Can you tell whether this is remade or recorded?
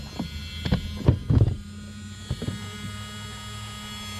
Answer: recorded